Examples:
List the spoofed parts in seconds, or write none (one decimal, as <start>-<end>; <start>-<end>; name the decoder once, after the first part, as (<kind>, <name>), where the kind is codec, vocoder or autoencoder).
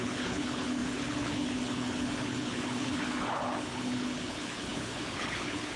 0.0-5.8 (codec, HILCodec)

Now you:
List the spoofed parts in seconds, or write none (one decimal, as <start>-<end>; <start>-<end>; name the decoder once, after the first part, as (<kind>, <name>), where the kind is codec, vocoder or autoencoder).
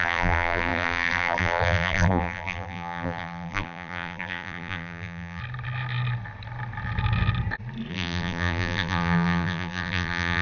0.0-5.4 (vocoder, BigVGAN v2); 7.9-10.4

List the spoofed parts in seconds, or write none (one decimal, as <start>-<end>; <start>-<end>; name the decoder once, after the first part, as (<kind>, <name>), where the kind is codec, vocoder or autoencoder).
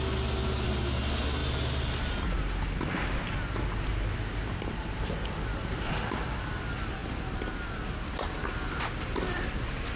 none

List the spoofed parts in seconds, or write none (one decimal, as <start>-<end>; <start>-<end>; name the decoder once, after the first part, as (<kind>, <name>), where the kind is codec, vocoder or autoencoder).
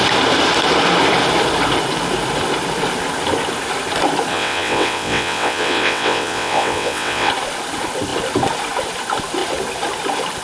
4.3-7.3 (vocoder, WaveNeXt)